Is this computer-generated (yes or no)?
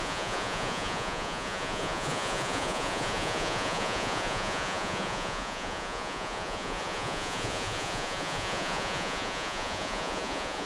yes